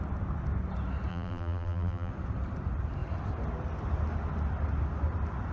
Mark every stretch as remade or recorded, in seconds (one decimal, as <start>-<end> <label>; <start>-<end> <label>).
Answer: 0.0-1.1 recorded; 1.1-2.1 remade; 2.1-5.5 recorded